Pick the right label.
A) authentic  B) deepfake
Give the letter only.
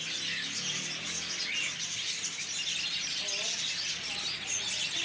A